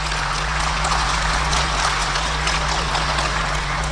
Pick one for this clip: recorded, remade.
remade